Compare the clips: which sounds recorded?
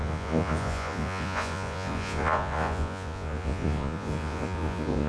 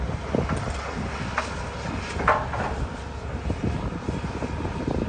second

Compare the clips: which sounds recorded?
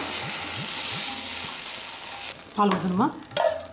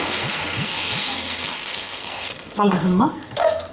first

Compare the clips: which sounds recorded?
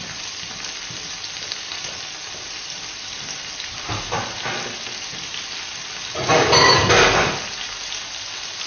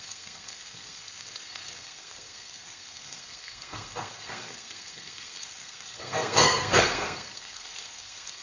first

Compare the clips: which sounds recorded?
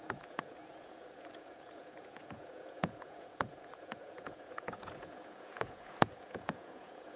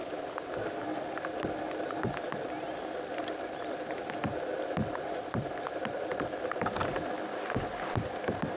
second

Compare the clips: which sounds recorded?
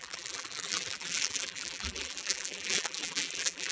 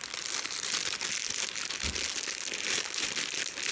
second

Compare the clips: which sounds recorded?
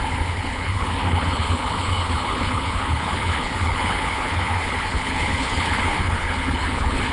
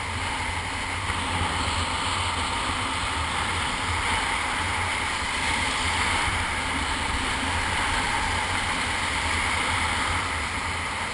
second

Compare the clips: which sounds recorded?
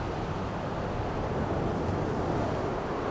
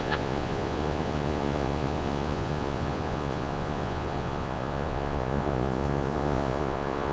first